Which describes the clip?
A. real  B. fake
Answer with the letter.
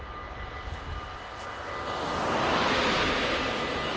A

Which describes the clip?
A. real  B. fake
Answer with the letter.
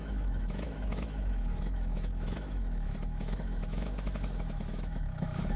B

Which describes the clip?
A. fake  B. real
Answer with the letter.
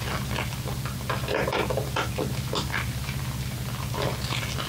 B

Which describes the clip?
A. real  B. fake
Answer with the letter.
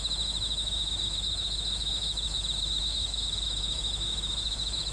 B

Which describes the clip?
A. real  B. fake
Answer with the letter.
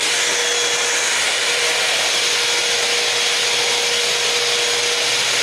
A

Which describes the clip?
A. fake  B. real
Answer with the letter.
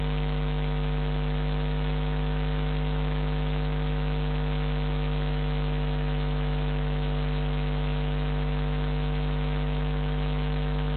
A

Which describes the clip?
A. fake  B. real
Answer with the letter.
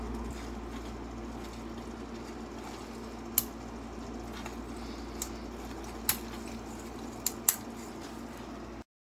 B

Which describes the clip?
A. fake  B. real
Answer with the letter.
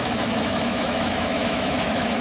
A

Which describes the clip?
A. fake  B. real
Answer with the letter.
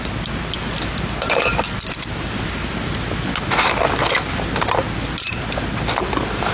B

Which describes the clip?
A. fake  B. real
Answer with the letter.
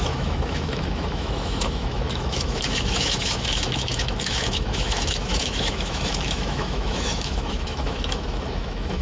A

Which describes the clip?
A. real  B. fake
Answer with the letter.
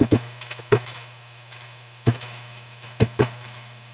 B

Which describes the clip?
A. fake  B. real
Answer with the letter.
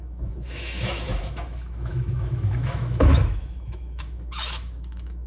A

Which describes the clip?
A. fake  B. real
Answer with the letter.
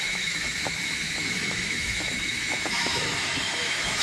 A